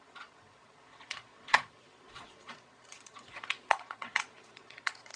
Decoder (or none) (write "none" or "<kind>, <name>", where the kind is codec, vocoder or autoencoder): vocoder, Vocos